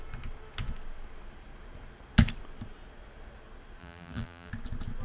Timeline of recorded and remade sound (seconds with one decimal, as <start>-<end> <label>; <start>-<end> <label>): 0.0-3.8 recorded; 3.8-4.5 remade; 4.5-5.0 recorded